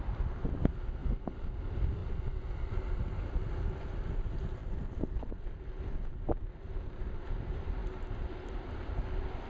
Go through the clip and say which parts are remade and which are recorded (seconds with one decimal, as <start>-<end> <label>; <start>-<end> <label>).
0.0-1.0 recorded; 1.0-1.6 remade; 1.6-4.6 recorded; 4.6-5.4 remade; 5.4-9.5 recorded

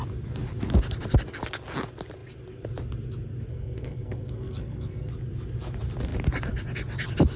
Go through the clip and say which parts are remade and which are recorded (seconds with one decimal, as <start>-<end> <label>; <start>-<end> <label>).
0.0-3.5 recorded; 3.5-5.1 remade; 5.1-7.4 recorded

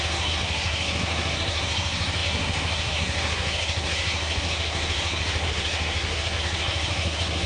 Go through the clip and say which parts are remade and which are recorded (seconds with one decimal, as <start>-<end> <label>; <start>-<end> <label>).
0.0-7.5 remade